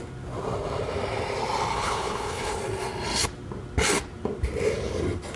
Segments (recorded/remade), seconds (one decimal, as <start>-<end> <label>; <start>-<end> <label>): 0.0-1.7 recorded; 1.7-2.6 remade; 2.6-5.4 recorded